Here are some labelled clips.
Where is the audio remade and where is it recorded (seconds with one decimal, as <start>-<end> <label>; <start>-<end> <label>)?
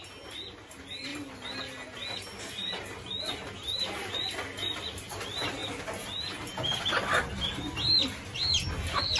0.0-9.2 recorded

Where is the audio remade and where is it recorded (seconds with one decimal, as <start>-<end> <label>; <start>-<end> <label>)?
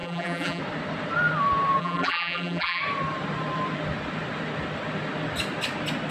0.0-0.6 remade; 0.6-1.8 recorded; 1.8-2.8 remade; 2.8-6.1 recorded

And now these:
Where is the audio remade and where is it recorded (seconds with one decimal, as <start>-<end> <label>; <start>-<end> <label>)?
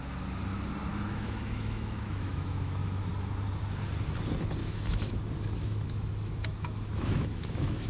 0.0-0.9 recorded; 0.9-3.1 remade; 3.1-4.6 recorded; 4.6-5.2 remade; 5.2-5.7 recorded; 5.7-7.9 remade